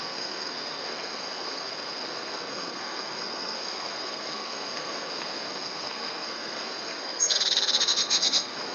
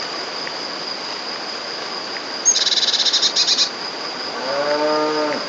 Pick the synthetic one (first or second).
first